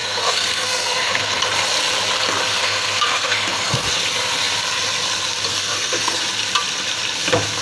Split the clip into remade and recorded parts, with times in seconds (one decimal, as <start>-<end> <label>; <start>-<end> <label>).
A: 0.0-1.5 remade; 1.5-2.5 recorded; 2.5-3.9 remade; 3.9-5.5 recorded; 5.5-6.2 remade; 6.2-7.6 recorded